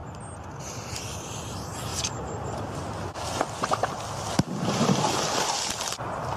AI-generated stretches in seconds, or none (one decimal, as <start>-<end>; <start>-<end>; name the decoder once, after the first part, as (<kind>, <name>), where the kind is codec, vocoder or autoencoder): none